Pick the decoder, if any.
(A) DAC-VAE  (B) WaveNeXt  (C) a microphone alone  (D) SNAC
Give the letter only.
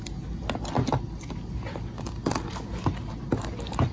C